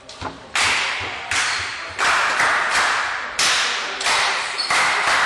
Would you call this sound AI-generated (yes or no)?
no